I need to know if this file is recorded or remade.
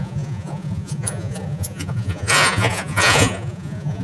remade